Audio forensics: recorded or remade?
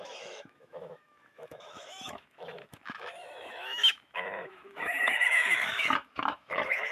remade